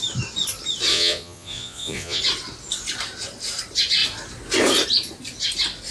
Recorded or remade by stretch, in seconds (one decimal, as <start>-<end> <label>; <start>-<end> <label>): 0.0-0.9 recorded; 0.9-2.2 remade; 2.2-5.9 recorded